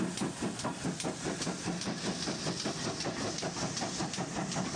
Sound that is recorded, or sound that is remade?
recorded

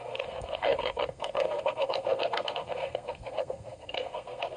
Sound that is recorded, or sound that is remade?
remade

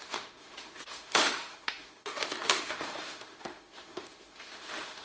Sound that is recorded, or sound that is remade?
remade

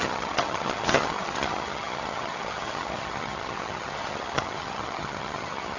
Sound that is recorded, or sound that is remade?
remade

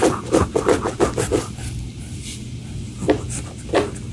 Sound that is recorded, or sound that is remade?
recorded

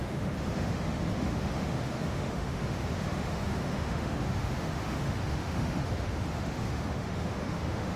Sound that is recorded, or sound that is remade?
remade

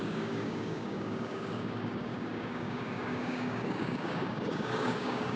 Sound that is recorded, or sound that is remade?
remade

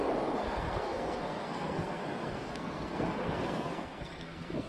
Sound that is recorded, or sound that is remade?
remade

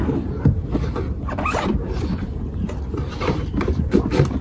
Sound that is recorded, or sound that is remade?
remade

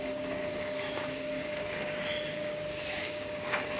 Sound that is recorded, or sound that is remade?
remade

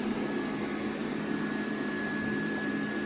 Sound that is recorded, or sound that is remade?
recorded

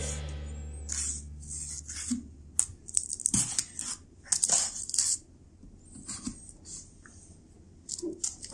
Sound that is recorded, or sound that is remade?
recorded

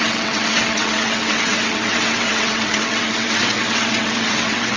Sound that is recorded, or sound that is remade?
remade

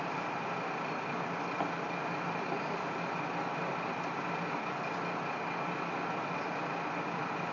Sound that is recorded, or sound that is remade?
recorded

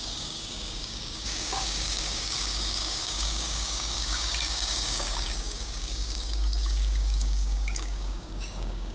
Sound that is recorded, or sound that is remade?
remade